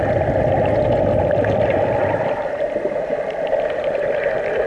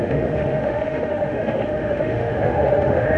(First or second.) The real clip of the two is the first